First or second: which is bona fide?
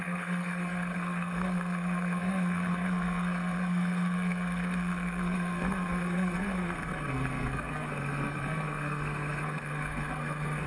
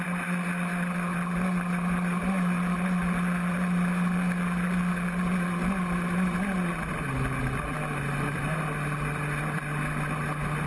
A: second